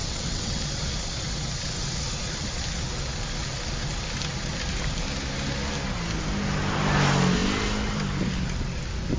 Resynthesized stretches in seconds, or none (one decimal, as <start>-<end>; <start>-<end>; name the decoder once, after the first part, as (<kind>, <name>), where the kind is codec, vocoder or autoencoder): 0.0-0.6 (vocoder, WaveNeXt)